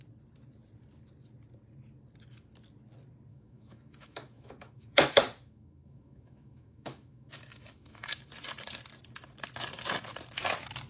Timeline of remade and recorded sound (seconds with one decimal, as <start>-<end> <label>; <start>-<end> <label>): 0.0-3.3 recorded; 3.3-8.2 remade; 8.2-10.9 recorded